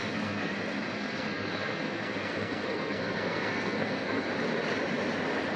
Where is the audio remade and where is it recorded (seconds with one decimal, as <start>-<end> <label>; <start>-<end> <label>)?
0.0-0.5 remade; 0.5-0.9 recorded; 0.9-4.3 remade; 4.3-5.6 recorded